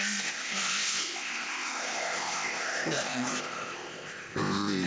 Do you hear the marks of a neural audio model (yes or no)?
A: yes